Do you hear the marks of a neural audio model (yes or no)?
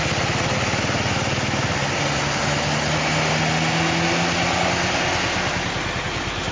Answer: no